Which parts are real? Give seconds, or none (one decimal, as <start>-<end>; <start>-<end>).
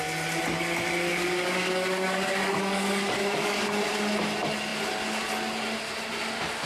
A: 0.0-1.1; 3.7-6.7